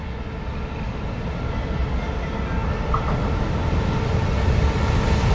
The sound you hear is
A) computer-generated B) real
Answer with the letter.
B